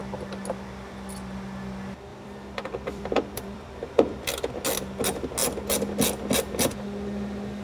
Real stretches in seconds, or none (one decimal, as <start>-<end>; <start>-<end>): 0.0-2.1; 4.5-7.6

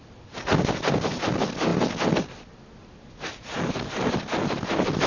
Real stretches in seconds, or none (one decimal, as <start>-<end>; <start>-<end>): 0.0-0.8; 1.7-5.1

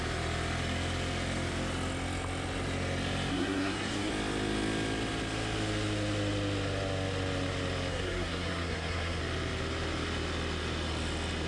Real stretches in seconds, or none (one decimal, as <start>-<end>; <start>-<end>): 0.0-3.3; 4.1-7.9; 9.2-11.5

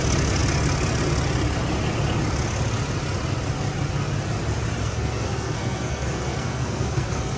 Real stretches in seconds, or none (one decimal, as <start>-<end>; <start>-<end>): 0.0-4.8

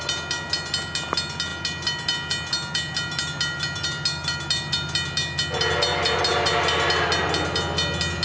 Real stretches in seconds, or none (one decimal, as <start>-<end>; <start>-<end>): 0.0-8.2